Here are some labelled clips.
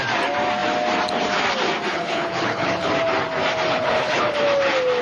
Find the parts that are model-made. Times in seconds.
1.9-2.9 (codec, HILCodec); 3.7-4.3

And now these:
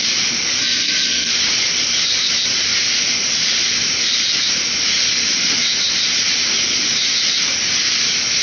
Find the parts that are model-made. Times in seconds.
0.6-1.3 (codec, SNAC)

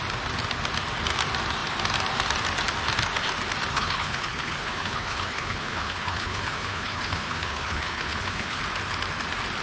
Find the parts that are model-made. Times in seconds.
3.7-8.6 (codec, HILCodec)

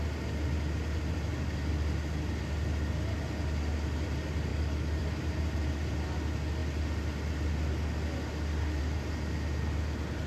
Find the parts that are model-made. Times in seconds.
4.5-5.0 (codec, DAC)

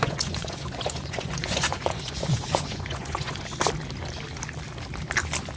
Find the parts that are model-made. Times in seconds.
0.0-3.4 (vocoder, Vocos)

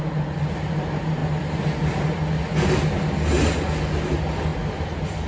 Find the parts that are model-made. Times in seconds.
none